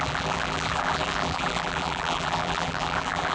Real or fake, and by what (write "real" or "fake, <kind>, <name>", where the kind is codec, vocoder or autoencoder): fake, vocoder, BigVGAN v2